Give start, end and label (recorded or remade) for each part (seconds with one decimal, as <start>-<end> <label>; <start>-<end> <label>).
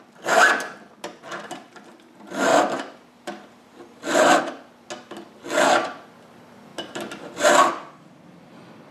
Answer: 0.0-2.5 recorded; 2.5-4.4 remade; 4.4-6.7 recorded; 6.7-8.5 remade; 8.5-8.9 recorded